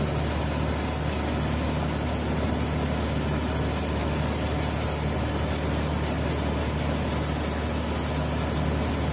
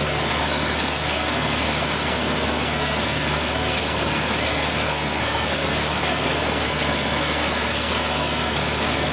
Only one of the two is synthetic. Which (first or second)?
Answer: second